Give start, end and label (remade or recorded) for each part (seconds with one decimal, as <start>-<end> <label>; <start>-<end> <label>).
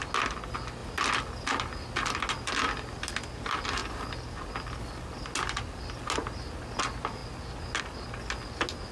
0.0-8.9 recorded